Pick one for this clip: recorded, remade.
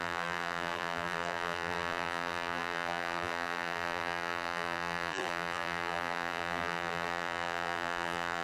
remade